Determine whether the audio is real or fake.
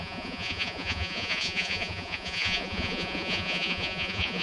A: fake